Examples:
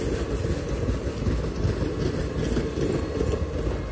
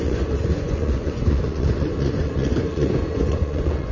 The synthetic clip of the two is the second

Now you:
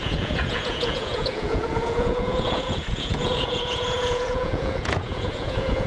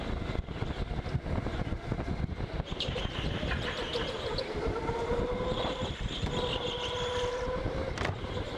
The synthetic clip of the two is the first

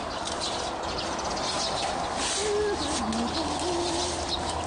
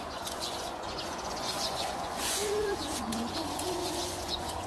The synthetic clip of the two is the second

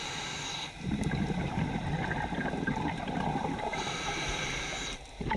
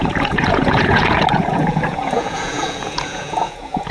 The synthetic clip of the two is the second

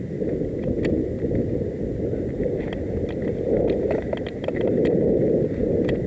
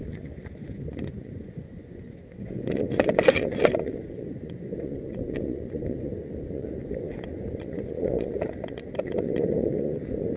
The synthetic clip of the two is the second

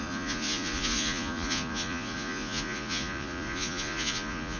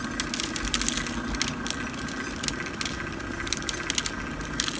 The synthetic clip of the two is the first